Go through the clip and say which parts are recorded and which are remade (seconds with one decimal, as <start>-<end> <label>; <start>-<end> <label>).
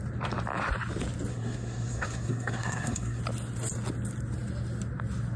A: 0.0-1.3 recorded; 1.3-3.2 remade; 3.2-5.4 recorded